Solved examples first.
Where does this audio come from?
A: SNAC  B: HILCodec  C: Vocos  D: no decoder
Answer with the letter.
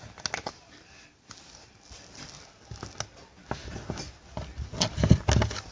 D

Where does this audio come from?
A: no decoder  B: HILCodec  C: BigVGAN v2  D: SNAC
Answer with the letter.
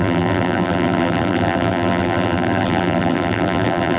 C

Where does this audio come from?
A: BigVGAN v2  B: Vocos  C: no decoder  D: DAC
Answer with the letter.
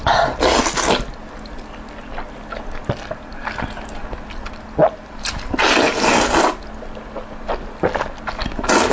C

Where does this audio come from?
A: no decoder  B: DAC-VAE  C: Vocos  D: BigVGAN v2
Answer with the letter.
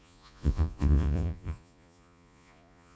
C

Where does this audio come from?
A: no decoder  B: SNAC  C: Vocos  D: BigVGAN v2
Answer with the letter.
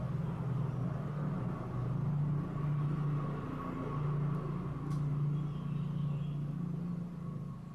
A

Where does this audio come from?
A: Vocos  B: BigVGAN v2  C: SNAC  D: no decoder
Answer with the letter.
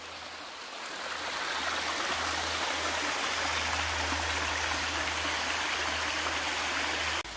D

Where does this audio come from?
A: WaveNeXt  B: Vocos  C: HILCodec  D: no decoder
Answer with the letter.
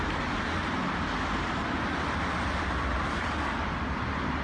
D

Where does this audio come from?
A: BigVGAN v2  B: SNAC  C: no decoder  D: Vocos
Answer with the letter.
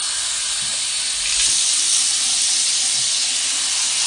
C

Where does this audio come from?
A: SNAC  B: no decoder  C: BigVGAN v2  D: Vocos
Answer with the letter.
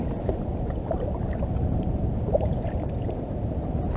C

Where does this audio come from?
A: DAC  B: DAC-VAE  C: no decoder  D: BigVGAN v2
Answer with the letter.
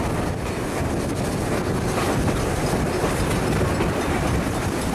C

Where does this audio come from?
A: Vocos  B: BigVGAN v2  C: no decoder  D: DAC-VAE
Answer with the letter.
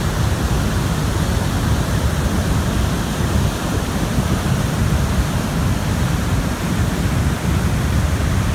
C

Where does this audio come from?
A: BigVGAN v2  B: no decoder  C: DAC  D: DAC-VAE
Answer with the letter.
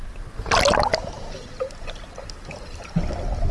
B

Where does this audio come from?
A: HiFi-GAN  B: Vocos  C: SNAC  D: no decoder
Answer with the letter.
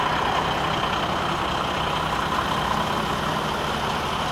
D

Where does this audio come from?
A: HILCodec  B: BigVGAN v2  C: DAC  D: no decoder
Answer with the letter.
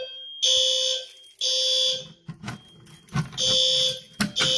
D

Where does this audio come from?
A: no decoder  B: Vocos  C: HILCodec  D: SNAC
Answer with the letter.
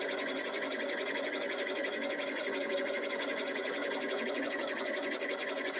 B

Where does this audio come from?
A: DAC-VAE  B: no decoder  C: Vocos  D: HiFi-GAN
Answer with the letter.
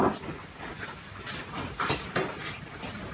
B